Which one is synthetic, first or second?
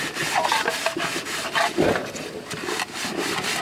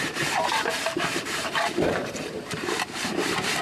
second